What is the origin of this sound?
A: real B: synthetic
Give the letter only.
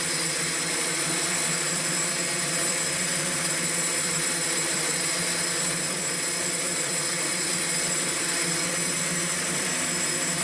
B